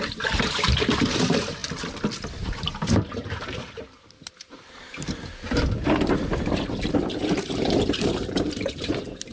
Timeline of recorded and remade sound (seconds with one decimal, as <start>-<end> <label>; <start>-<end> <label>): 0.0-1.6 remade; 1.6-2.7 recorded; 2.7-9.3 remade